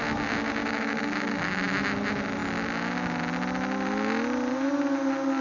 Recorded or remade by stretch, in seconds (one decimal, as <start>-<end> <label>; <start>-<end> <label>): 0.0-0.6 recorded; 0.6-1.5 remade; 1.5-5.4 recorded